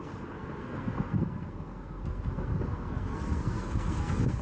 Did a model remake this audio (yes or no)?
yes